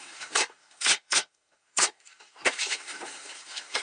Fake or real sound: fake